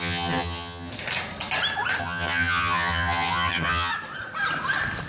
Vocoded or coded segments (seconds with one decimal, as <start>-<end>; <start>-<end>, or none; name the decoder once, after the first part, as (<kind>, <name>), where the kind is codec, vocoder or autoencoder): 0.0-0.9 (vocoder, HiFi-GAN); 2.0-3.9